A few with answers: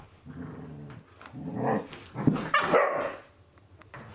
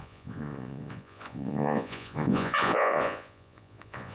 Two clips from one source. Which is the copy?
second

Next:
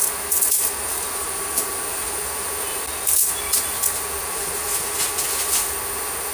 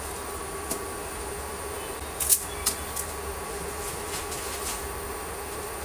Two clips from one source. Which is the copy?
first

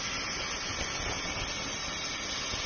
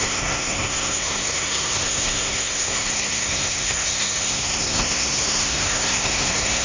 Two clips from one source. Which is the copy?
second